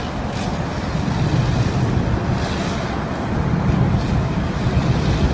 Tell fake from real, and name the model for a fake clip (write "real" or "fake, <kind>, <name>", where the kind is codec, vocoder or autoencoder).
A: real